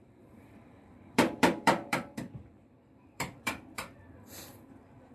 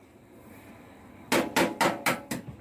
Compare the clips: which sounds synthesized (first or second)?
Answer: first